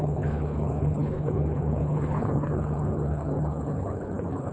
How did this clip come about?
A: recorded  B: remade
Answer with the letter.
B